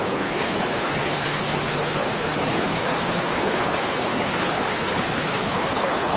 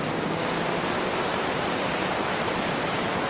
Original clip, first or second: second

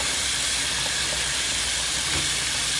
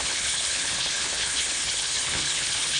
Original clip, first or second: first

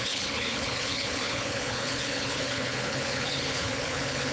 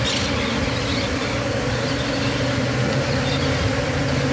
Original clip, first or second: second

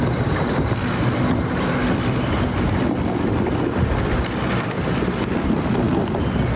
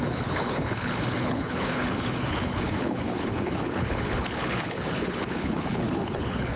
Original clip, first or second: first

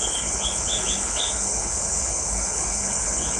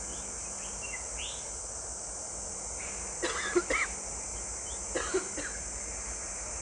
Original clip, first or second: second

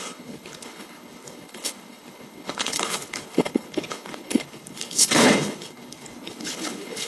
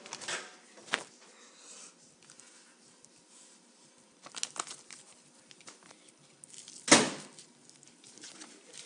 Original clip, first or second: second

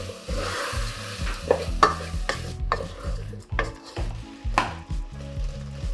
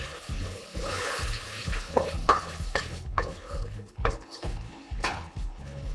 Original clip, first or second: first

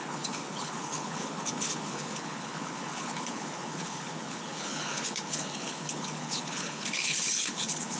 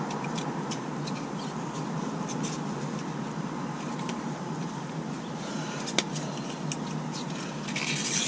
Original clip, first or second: second